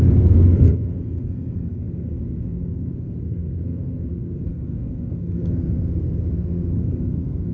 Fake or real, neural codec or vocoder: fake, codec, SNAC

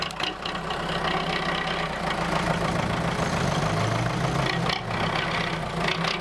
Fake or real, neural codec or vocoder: real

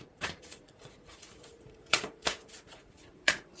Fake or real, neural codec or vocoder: fake, vocoder, Vocos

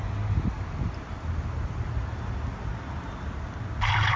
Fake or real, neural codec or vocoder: real